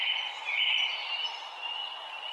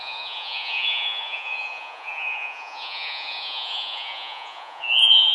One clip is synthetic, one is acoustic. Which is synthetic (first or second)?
second